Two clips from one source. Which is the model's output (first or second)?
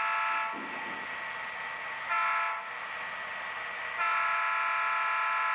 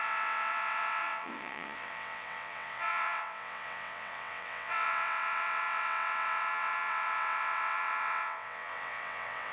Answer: second